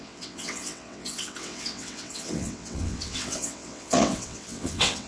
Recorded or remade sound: remade